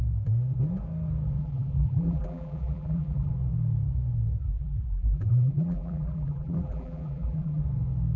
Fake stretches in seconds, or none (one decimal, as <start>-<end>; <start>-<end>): 1.4-3.3; 4.4-7.6